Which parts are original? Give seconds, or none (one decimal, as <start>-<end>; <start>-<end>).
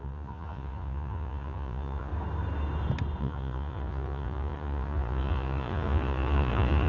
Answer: 2.1-3.2